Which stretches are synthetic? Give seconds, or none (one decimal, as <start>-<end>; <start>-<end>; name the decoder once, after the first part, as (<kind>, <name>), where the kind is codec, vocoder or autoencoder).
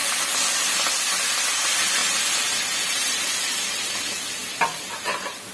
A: 2.0-3.2 (vocoder, BigVGAN v2)